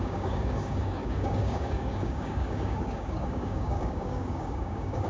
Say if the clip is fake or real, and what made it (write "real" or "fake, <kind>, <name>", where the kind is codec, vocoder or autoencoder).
fake, codec, DAC